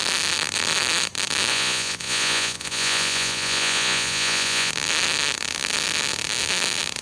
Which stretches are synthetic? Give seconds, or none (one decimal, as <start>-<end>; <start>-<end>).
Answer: 1.5-4.7